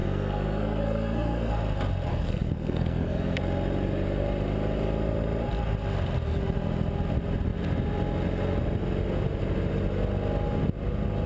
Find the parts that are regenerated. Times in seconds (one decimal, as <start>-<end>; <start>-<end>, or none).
0.0-1.5; 2.1-3.4